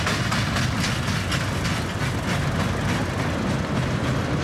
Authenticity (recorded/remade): recorded